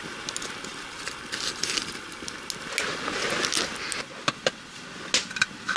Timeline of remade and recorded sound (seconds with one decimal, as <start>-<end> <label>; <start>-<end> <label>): 0.0-5.8 recorded